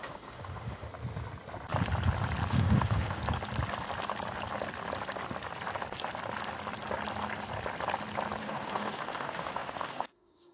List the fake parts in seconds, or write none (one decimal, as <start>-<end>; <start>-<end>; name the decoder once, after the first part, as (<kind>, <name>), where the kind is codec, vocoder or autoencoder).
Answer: 0.0-0.9 (autoencoder, DAC-VAE); 2.5-3.2; 8.4-10.5